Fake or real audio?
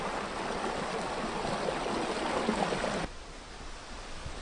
real